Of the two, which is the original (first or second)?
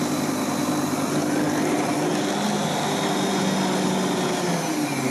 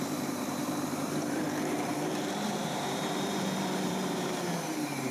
first